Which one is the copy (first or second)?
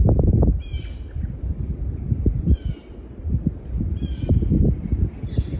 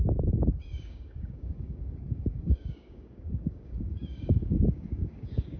second